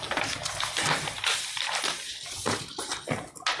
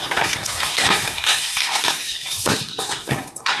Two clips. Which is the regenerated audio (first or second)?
second